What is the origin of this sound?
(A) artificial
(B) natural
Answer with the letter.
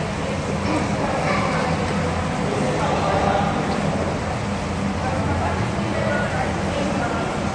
B